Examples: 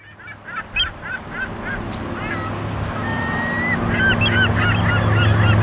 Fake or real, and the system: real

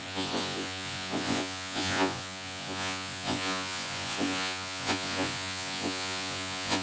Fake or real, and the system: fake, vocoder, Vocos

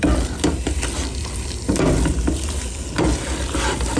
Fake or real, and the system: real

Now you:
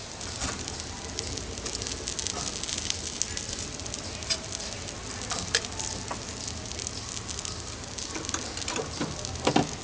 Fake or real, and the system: real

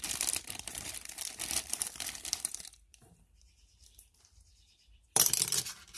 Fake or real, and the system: fake, vocoder, BigVGAN v2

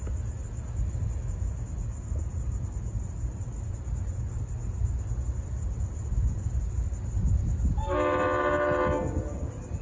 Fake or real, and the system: real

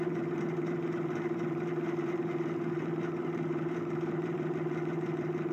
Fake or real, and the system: fake, vocoder, BigVGAN v2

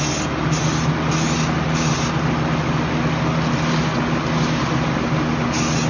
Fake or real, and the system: real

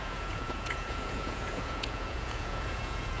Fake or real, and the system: fake, vocoder, Vocos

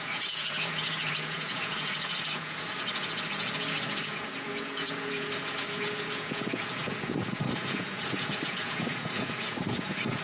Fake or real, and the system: fake, vocoder, Vocos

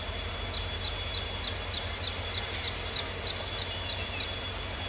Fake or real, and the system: real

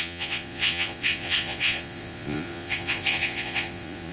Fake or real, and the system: fake, vocoder, Vocos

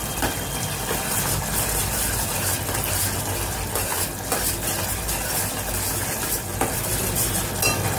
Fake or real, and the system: real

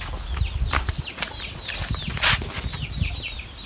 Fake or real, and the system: real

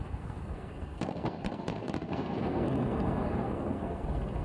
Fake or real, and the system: fake, codec, SNAC